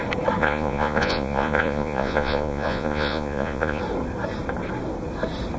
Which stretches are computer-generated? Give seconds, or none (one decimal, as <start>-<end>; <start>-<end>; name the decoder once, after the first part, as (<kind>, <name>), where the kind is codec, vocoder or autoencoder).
0.4-3.8 (vocoder, Vocos)